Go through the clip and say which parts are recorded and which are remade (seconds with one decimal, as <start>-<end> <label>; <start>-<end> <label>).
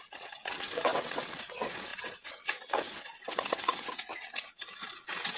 0.0-5.4 remade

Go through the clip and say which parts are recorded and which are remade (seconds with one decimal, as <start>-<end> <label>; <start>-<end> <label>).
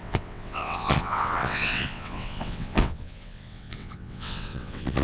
0.0-5.0 remade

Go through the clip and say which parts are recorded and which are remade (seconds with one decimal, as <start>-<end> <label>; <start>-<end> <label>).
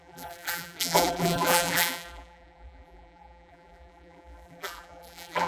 0.0-5.5 remade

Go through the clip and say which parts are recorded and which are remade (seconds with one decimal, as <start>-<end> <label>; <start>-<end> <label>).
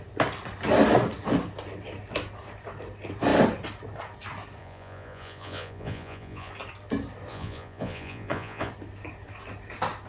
0.0-4.6 recorded; 4.6-6.5 remade; 6.5-7.3 recorded; 7.3-8.7 remade; 8.7-10.1 recorded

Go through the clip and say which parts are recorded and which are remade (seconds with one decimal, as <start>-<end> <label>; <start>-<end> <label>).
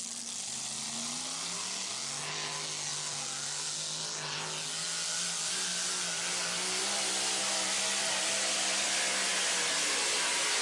0.0-10.6 recorded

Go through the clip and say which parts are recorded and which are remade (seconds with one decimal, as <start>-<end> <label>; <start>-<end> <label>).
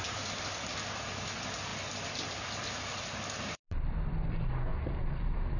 0.0-5.6 recorded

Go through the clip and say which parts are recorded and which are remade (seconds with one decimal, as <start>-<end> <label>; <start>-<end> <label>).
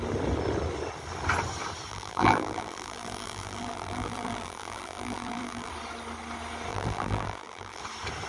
0.0-1.9 recorded; 1.9-5.7 remade; 5.7-6.7 recorded; 6.7-7.8 remade; 7.8-8.3 recorded